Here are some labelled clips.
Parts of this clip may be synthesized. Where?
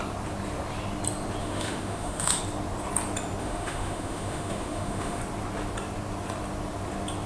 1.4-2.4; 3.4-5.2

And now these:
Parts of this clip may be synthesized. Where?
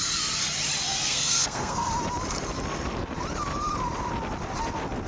1.0-1.9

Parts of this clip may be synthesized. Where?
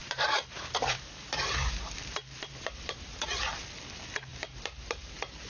0.0-3.3; 4.3-5.1